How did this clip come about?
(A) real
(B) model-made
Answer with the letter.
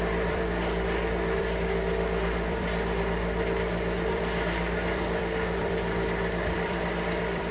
B